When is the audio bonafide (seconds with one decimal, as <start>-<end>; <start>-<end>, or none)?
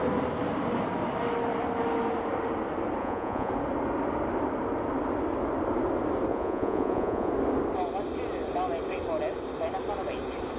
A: 0.0-3.0; 3.5-6.3; 7.3-10.6